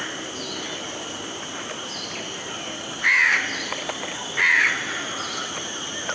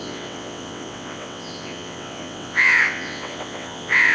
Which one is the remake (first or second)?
second